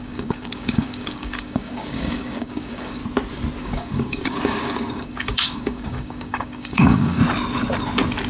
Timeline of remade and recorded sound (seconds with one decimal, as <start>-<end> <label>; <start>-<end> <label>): 0.0-3.0 remade; 3.0-3.6 recorded; 3.6-7.2 remade; 7.2-8.3 recorded